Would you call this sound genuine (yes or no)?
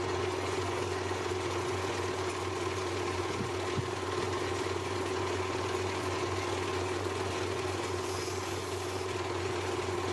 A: no